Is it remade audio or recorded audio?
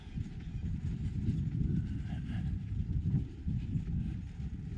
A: recorded